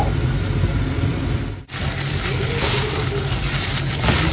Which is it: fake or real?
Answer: real